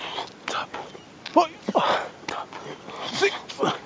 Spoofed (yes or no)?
no